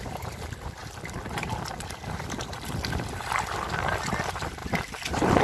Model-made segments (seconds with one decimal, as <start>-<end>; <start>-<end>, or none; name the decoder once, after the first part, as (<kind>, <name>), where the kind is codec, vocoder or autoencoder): none